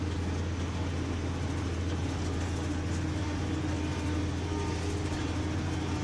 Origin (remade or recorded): recorded